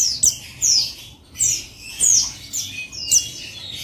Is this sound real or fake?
real